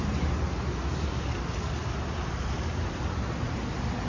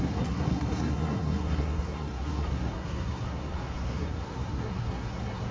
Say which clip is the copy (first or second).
second